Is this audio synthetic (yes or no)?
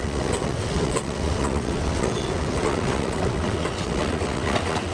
yes